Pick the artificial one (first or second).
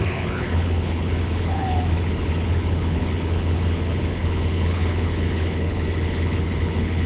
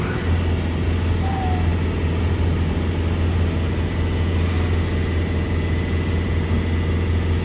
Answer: first